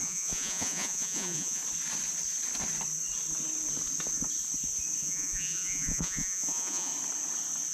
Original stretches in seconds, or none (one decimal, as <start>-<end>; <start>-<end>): 1.6-5.0; 6.9-7.7

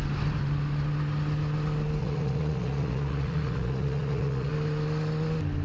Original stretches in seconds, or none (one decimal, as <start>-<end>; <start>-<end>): 0.0-2.0; 4.5-5.6

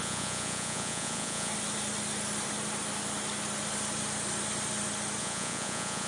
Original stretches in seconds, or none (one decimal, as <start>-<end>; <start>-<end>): 1.5-5.2

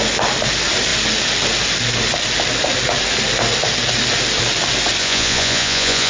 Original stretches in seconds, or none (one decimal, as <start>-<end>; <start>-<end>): 0.0-5.0

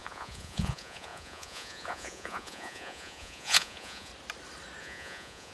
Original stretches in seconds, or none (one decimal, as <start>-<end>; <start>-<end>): 4.1-4.8